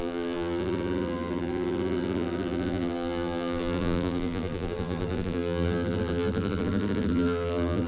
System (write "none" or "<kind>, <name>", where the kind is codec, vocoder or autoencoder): vocoder, BigVGAN v2